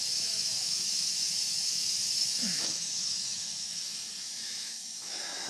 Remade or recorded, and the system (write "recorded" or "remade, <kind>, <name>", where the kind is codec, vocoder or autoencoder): remade, autoencoder, DAC-VAE